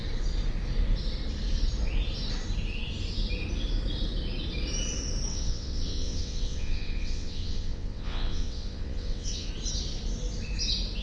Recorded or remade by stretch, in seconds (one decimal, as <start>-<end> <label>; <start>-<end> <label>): 0.0-5.3 recorded; 5.3-9.5 remade; 9.5-11.0 recorded